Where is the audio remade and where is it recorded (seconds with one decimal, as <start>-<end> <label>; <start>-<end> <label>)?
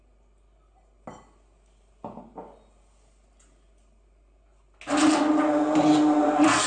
0.0-6.7 recorded